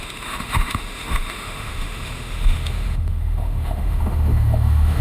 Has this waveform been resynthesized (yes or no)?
yes